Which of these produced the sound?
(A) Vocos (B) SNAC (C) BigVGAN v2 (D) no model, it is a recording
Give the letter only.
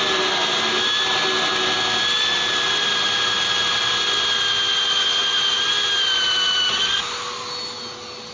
D